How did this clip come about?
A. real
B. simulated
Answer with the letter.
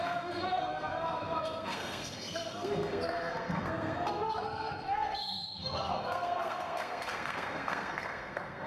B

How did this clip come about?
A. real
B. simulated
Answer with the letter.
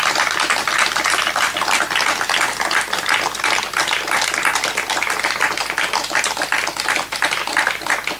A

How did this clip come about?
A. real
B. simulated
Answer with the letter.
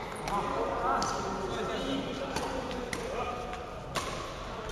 A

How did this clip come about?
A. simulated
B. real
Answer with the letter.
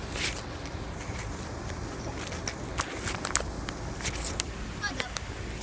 B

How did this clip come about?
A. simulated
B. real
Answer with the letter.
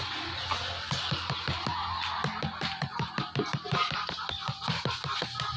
B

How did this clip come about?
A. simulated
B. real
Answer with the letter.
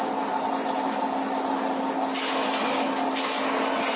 B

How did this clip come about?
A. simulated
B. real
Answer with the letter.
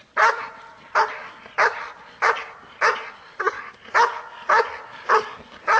B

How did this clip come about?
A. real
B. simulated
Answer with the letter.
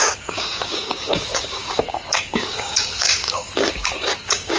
B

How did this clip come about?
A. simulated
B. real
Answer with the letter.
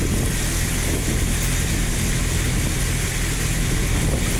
B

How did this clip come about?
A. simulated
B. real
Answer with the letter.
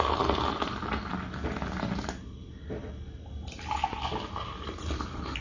B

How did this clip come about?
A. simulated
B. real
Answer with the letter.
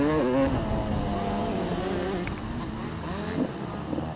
B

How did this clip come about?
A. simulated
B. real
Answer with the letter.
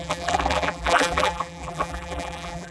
A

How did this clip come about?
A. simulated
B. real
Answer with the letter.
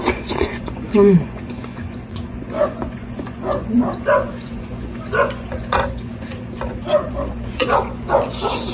A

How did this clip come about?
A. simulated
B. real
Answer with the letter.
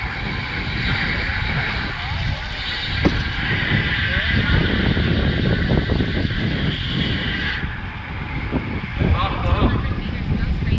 B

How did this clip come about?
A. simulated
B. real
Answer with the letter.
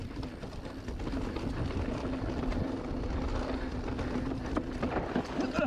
B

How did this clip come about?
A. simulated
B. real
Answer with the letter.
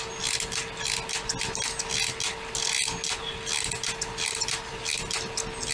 B